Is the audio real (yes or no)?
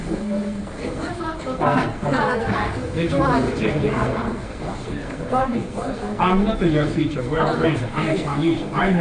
no